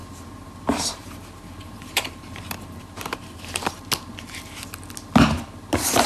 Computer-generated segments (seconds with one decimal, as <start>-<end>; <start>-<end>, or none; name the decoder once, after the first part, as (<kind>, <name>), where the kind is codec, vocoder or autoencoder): 0.0-3.7 (vocoder, BigVGAN v2)